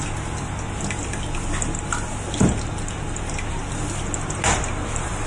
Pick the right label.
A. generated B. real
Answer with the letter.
B